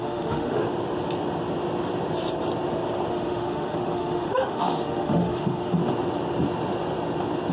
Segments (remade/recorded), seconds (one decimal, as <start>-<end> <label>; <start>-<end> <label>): 0.0-0.6 remade; 0.6-3.1 recorded; 3.1-5.8 remade; 5.8-7.5 recorded